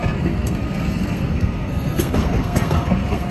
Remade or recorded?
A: remade